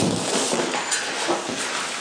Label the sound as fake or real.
real